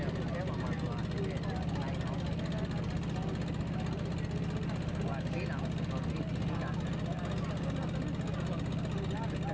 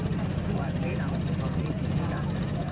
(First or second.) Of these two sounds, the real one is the first